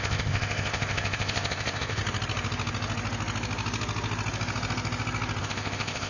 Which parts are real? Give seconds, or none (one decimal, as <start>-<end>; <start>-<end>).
2.0-5.4